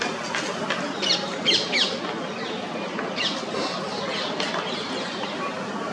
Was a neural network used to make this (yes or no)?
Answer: no